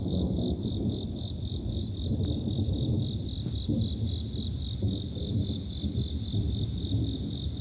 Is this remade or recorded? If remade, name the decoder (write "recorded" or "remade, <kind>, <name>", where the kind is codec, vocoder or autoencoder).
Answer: remade, vocoder, BigVGAN v2